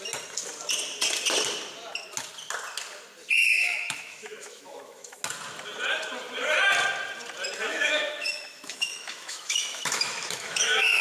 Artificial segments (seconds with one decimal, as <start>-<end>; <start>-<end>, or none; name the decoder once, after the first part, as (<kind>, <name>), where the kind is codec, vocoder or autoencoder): 3.4-5.2 (autoencoder, DAC-VAE); 7.7-11.0